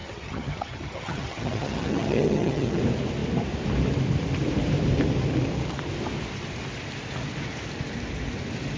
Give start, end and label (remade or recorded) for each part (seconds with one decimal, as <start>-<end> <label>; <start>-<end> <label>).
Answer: 0.0-2.8 remade; 2.8-8.8 recorded